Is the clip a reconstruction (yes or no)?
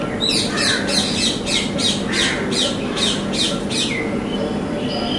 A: no